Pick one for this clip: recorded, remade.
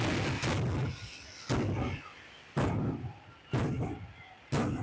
recorded